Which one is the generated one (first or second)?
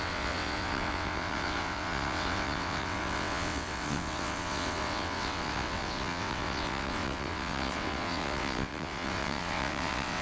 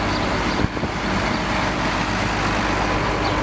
first